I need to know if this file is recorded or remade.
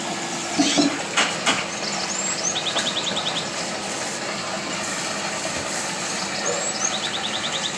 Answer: recorded